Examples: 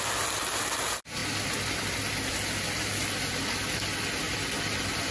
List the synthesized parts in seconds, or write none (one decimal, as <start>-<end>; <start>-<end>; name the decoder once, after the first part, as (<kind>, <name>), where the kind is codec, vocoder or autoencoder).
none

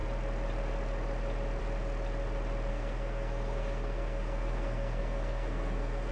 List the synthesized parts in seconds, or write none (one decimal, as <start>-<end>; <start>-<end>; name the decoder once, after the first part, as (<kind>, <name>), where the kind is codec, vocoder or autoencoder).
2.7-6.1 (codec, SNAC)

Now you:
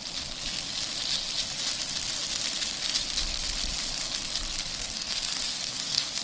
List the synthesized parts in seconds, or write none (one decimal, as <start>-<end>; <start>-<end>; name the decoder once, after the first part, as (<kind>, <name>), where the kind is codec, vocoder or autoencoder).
4.8-6.2 (codec, SNAC)